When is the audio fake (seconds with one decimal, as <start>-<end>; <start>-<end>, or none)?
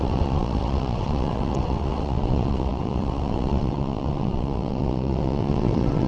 0.0-6.1